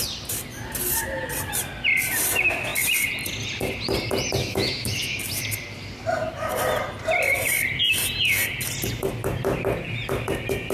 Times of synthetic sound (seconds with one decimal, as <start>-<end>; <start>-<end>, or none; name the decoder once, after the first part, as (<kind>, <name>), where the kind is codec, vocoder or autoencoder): 4.4-5.2 (autoencoder, DAC-VAE)